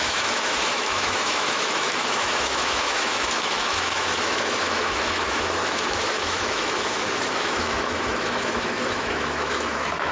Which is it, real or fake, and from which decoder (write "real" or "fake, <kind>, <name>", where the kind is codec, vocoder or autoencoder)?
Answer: fake, autoencoder, DAC-VAE